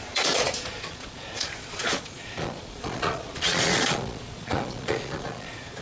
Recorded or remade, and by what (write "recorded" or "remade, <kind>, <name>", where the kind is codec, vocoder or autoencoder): remade, vocoder, Vocos